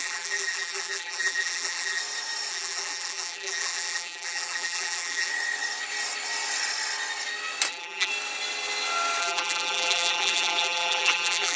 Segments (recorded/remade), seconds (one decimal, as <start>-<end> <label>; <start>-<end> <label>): 0.0-2.0 remade; 2.0-2.5 recorded; 2.5-5.3 remade; 5.3-7.7 recorded; 7.7-8.1 remade; 8.1-9.2 recorded; 9.2-11.6 remade